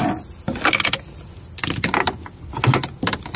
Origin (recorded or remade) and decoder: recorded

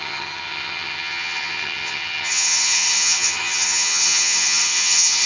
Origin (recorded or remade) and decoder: remade, vocoder, HiFi-GAN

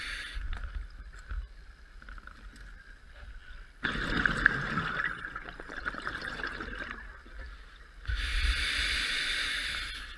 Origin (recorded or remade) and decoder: recorded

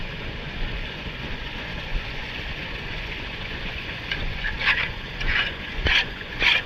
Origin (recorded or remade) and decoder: remade, vocoder, Vocos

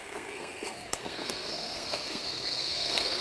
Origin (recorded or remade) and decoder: remade, codec, SNAC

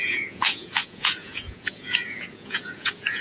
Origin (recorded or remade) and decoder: remade, vocoder, Vocos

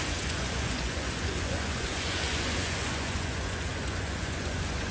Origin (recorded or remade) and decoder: remade, vocoder, Vocos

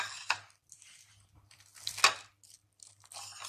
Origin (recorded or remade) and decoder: recorded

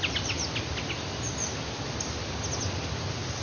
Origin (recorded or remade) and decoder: recorded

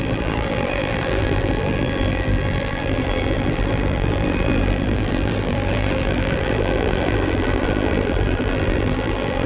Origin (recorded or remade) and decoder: remade, vocoder, BigVGAN v2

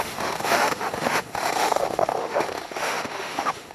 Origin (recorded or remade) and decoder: remade, autoencoder, DAC-VAE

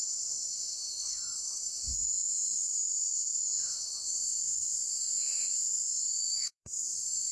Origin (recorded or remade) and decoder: remade, autoencoder, DAC-VAE